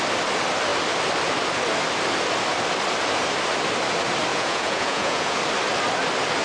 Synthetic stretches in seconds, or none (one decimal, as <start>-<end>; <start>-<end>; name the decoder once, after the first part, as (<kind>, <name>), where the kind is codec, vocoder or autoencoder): 4.3-5.4 (vocoder, Vocos)